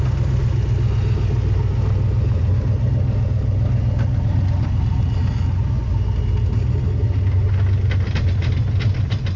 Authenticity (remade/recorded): recorded